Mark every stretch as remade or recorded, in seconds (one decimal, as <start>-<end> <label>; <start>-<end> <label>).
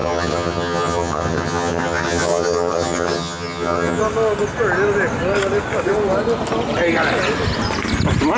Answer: 0.0-4.0 remade; 4.0-8.4 recorded